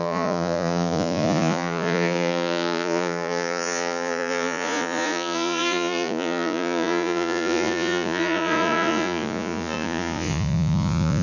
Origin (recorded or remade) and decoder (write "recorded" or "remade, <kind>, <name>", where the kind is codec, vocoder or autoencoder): remade, vocoder, Vocos